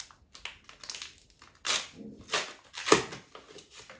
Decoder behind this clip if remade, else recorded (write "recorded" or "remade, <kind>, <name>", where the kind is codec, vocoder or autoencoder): recorded